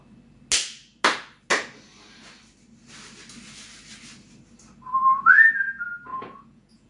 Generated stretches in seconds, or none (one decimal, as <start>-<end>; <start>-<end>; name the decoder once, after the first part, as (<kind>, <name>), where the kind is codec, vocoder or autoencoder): 6.1-6.9 (vocoder, Vocos)